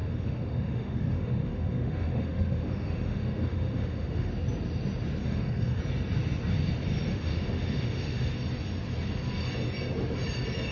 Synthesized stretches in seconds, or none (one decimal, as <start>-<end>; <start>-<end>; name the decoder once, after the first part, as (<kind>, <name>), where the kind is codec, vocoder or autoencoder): 0.0-4.3 (autoencoder, DAC-VAE); 5.2-5.8; 7.1-8.3